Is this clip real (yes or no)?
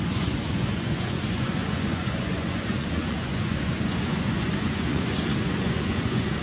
no